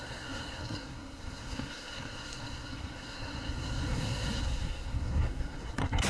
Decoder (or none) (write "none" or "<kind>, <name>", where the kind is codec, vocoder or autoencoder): codec, SNAC